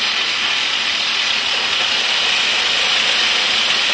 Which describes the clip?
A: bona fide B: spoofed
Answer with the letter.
A